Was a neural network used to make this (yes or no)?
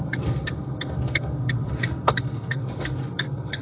yes